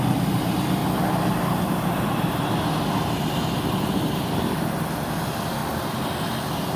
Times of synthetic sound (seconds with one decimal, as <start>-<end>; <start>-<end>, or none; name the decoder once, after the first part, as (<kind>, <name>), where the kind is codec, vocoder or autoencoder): 0.0-0.8 (vocoder, BigVGAN v2); 1.3-5.6

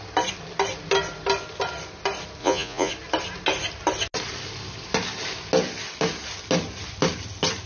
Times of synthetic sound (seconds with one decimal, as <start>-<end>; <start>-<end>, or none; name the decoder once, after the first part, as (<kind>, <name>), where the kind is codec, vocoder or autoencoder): 2.4-2.9 (vocoder, Vocos)